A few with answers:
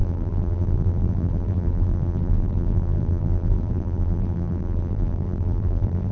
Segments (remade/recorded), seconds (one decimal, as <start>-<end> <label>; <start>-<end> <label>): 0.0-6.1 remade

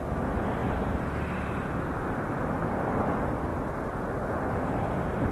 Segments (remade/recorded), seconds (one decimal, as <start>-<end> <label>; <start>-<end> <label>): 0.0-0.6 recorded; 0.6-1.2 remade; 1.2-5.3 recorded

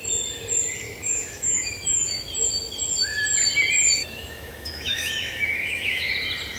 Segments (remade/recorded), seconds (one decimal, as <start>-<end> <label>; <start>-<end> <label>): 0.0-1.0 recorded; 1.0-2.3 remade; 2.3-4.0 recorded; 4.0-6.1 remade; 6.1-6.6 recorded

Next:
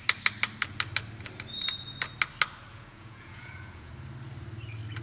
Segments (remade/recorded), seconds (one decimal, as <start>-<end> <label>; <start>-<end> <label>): 0.0-2.7 recorded; 2.7-3.9 remade; 3.9-5.0 recorded